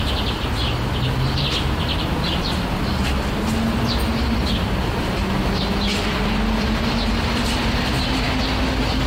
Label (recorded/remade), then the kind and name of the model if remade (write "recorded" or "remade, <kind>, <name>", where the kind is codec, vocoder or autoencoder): recorded